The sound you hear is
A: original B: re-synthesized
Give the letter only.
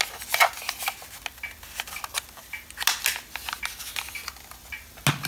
A